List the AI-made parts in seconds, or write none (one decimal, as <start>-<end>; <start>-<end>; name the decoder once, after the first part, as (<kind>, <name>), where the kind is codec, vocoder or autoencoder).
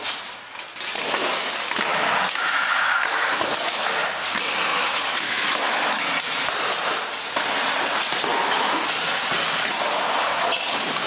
1.9-3.9 (autoencoder, DAC-VAE); 4.7-6.1; 8.3-8.8